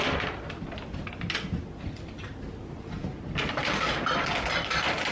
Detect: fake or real real